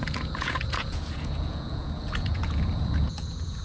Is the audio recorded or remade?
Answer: remade